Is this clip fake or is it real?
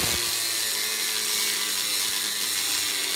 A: real